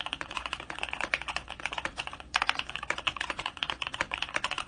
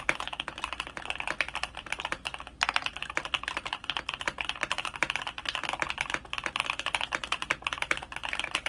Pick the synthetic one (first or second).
first